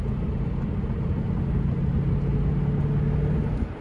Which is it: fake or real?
real